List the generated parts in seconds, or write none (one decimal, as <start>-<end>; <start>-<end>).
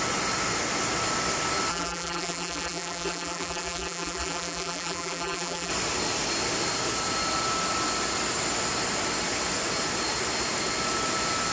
1.7-5.7